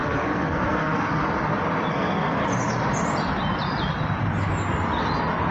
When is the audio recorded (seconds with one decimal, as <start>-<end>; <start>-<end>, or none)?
1.2-1.9; 2.4-5.5